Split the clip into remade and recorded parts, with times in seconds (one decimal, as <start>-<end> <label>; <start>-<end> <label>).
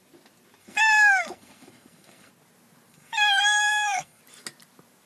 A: 0.0-0.6 recorded; 0.6-2.3 remade; 2.3-2.9 recorded; 2.9-4.2 remade; 4.2-5.1 recorded